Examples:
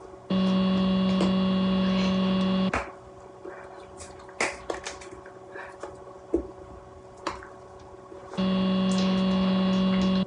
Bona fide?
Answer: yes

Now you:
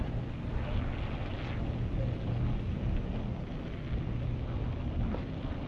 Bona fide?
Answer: yes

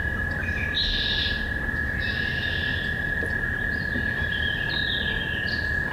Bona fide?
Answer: yes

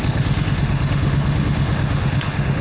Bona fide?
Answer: no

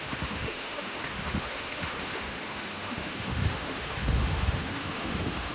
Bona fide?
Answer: no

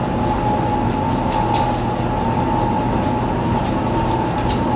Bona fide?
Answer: yes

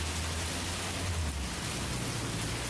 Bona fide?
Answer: yes